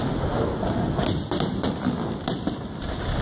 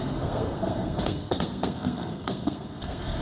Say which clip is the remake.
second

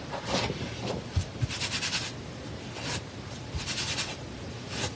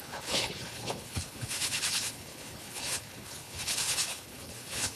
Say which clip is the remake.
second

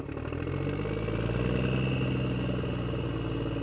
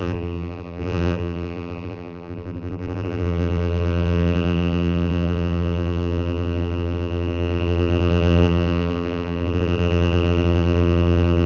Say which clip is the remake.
second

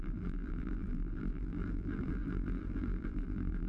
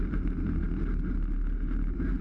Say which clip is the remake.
first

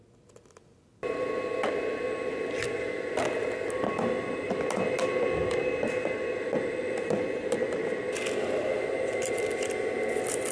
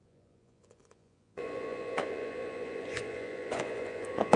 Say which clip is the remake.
second